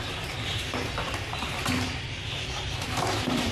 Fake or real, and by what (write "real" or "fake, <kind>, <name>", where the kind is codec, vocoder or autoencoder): fake, vocoder, BigVGAN v2